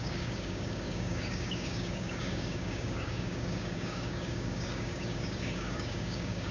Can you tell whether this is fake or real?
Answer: fake